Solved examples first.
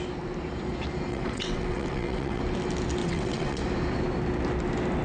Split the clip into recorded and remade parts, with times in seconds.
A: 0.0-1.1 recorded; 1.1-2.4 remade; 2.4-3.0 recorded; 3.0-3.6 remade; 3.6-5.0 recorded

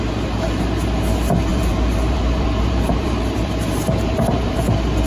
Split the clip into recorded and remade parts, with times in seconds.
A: 0.0-1.5 recorded; 1.5-4.6 remade; 4.6-5.1 recorded

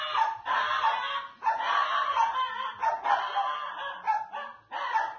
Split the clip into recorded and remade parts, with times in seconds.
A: 0.0-5.2 recorded

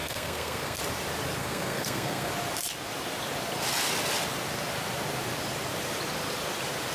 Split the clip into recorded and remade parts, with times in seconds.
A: 0.0-0.8 remade; 0.8-1.4 recorded; 1.4-2.3 remade; 2.3-6.9 recorded